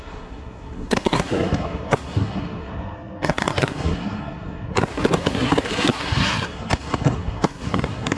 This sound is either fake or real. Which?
fake